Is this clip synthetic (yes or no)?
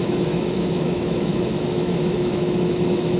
yes